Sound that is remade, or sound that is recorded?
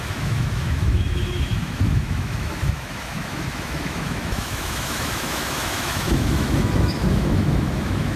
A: remade